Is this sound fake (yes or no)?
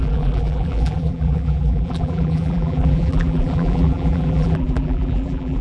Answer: yes